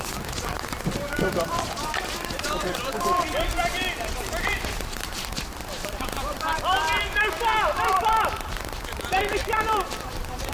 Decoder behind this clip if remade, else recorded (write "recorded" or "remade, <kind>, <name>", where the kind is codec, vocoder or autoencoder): remade, vocoder, BigVGAN v2